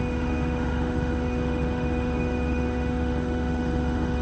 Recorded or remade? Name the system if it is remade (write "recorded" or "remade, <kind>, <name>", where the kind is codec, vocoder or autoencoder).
remade, autoencoder, DAC-VAE